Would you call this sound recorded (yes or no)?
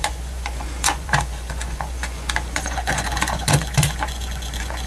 no